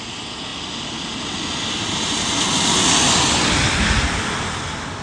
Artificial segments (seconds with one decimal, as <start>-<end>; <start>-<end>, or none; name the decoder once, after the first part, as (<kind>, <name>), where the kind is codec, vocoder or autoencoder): none